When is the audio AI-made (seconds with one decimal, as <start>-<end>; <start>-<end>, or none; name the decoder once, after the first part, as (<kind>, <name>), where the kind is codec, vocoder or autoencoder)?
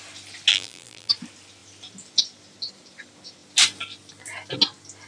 0.5-1.1 (vocoder, BigVGAN v2)